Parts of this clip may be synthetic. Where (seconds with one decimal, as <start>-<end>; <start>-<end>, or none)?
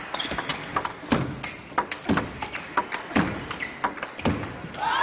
none